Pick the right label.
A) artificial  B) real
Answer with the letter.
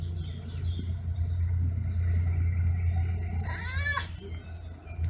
B